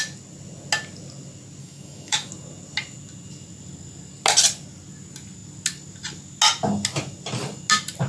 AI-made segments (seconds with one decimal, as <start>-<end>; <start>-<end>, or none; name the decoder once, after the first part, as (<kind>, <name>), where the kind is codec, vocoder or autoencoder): 1.6-2.3 (autoencoder, DAC-VAE)